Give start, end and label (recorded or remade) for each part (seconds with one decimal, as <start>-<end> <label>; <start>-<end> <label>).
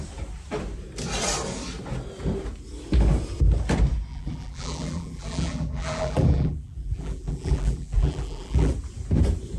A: 0.0-4.1 recorded; 4.1-8.7 remade; 8.7-9.6 recorded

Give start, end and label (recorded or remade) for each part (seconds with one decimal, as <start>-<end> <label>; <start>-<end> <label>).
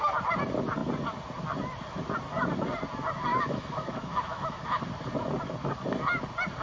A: 0.0-3.3 recorded; 3.3-4.8 remade; 4.8-6.6 recorded